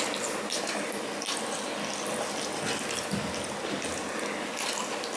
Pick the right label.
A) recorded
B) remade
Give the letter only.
A